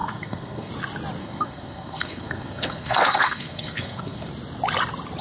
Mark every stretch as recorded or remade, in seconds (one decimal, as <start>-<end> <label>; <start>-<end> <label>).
0.0-0.7 remade; 0.7-1.2 recorded; 1.2-4.3 remade; 4.3-5.2 recorded